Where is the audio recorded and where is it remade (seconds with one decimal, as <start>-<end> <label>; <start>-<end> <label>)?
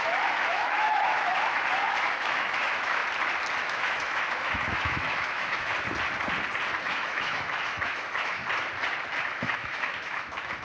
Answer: 0.0-3.0 remade; 3.0-3.6 recorded; 3.6-5.7 remade; 5.7-6.8 recorded; 6.8-8.4 remade; 8.4-9.3 recorded; 9.3-10.6 remade